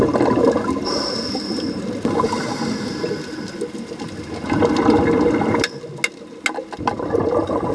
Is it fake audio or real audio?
real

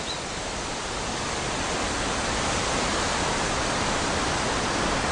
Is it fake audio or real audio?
real